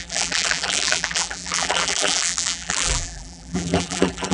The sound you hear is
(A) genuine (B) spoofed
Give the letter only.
B